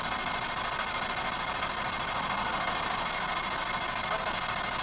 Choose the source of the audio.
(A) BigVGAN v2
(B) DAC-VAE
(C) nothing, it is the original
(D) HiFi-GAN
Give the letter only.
C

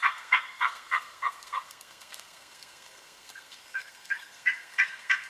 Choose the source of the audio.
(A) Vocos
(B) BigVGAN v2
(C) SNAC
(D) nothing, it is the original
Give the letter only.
C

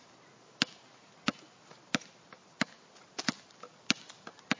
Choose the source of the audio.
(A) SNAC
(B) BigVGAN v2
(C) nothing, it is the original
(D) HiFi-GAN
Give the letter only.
C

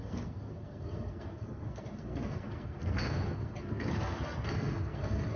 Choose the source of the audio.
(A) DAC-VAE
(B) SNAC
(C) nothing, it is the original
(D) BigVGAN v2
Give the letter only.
B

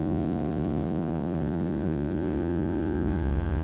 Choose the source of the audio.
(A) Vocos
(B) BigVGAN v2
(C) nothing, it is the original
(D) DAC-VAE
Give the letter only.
A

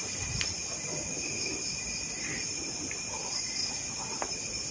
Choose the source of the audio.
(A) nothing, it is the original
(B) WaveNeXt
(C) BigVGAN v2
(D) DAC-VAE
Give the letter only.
A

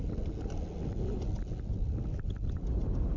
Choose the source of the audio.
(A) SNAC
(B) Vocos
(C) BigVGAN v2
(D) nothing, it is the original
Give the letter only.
D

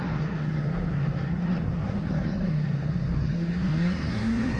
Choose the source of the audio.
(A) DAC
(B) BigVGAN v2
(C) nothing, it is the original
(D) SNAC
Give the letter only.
D